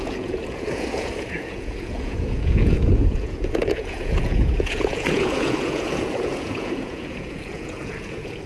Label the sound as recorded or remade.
remade